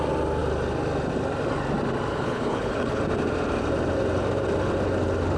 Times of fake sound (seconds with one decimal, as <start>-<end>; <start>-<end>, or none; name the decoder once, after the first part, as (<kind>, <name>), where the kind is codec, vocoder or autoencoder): 2.1-3.0 (codec, HILCodec)